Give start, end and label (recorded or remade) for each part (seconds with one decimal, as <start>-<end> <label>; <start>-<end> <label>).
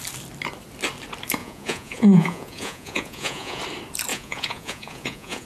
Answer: 0.0-1.4 recorded; 1.4-3.6 remade; 3.6-4.1 recorded; 4.1-5.5 remade